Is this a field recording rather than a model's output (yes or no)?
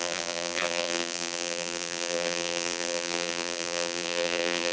no